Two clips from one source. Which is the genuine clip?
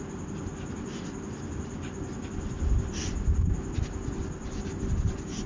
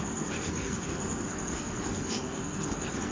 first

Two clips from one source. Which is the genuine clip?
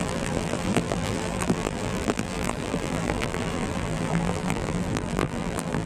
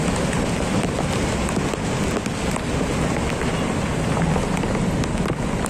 second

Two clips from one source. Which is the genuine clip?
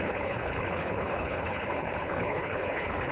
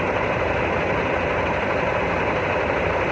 second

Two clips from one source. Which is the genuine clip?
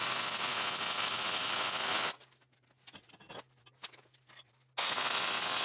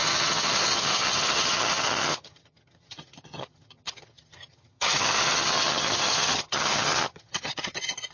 first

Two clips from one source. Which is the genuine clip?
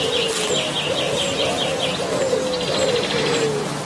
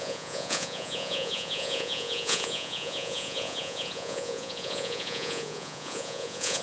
first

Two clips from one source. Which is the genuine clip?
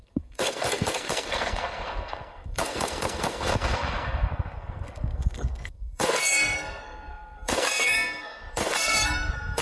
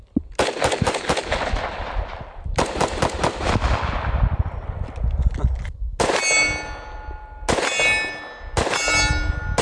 second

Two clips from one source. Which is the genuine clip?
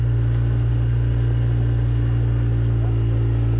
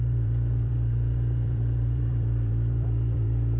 first